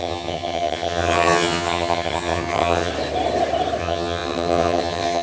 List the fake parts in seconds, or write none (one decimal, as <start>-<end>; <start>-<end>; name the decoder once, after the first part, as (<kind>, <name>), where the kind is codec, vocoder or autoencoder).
0.0-2.9 (vocoder, HiFi-GAN); 3.8-5.2